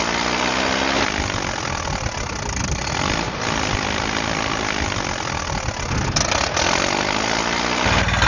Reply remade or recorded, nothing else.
recorded